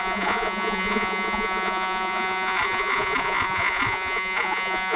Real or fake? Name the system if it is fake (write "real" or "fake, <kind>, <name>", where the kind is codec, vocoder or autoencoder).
fake, vocoder, Vocos